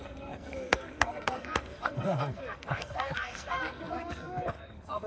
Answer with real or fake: fake